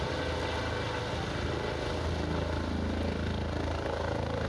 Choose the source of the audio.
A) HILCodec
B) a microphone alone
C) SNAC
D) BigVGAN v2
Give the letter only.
B